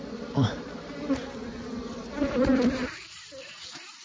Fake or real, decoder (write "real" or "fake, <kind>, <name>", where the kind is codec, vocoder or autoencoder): real